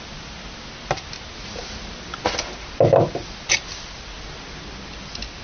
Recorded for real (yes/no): yes